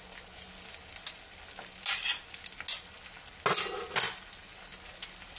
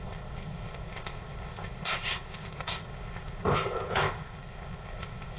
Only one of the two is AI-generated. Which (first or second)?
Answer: second